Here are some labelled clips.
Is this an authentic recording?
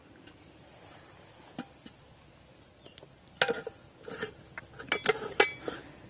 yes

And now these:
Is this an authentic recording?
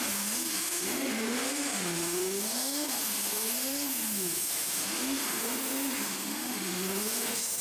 no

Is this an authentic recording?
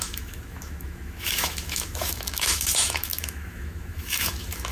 no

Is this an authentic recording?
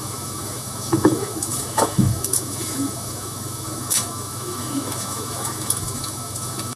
no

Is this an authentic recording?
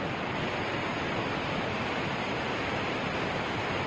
yes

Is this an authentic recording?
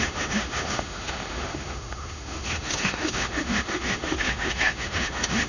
no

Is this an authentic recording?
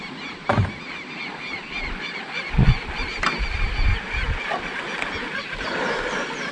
yes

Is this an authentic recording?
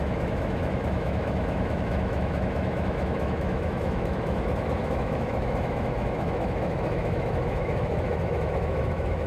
no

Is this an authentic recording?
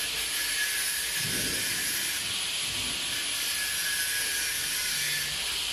yes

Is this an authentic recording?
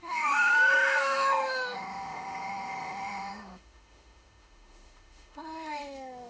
no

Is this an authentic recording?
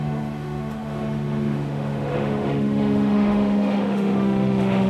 no